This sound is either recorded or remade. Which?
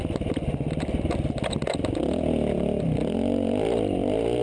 recorded